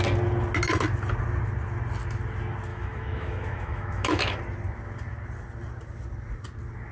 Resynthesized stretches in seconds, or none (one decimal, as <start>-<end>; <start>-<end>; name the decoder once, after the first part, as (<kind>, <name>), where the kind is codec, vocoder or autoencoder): 2.7-4.4 (autoencoder, DAC-VAE)